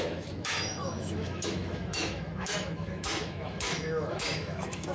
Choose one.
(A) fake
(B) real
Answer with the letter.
A